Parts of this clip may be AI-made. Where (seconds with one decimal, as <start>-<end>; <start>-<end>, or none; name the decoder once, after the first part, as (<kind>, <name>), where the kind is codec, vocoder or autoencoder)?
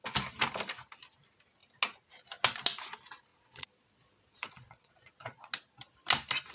3.3-5.5 (vocoder, Vocos)